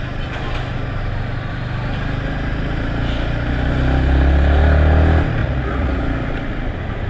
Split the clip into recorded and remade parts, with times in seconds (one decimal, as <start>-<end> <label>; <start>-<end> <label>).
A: 0.0-5.4 recorded; 5.4-6.0 remade; 6.0-7.1 recorded